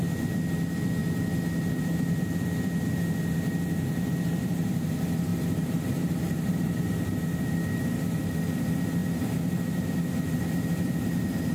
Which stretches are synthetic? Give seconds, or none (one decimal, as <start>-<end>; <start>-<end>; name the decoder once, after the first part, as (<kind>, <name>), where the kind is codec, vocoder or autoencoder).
0.0-1.0 (vocoder, BigVGAN v2); 1.8-11.5